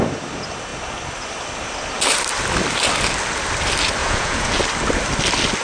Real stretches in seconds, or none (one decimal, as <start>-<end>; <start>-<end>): 0.0-4.0; 4.6-5.6